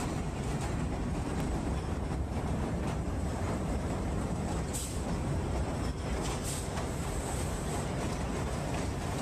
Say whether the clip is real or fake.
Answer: fake